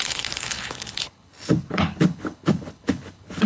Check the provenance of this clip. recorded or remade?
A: remade